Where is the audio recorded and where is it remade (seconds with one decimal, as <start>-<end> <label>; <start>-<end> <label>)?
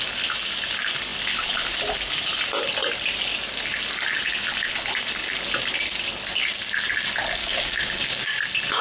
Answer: 0.0-7.4 recorded; 7.4-8.4 remade; 8.4-8.8 recorded